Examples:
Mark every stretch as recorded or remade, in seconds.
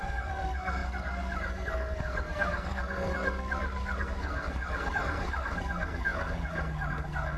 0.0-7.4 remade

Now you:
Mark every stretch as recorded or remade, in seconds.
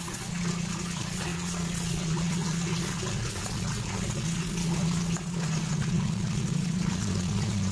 0.0-7.7 remade